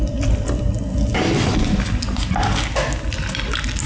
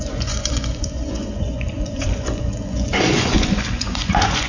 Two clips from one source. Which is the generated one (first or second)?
second